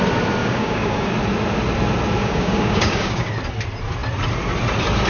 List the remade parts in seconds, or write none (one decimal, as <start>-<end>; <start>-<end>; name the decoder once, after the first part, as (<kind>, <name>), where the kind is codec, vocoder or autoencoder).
0.4-1.1 (codec, DAC); 2.2-3.3